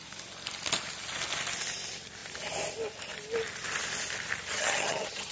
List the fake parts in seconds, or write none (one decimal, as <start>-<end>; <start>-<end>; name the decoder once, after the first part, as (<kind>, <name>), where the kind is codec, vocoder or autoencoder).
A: 4.5-5.3 (vocoder, HiFi-GAN)